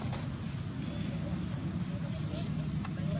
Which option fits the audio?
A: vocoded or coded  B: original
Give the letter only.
B